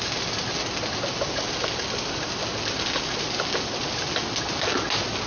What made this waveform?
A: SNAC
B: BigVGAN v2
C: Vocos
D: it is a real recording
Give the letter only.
D